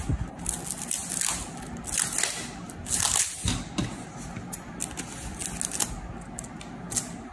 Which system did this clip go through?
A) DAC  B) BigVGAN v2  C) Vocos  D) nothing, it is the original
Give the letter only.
D